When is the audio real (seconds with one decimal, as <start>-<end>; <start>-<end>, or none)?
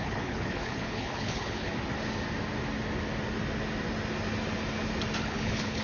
1.7-5.2